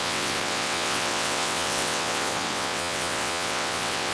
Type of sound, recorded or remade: remade